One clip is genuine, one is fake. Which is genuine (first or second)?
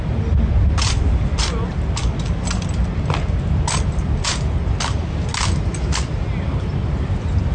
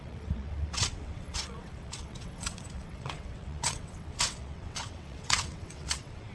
first